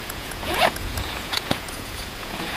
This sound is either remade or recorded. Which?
remade